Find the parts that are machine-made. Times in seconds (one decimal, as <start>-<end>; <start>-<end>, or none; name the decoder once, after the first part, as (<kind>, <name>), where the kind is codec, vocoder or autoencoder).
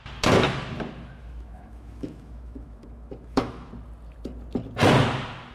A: 1.2-3.7 (autoencoder, DAC-VAE)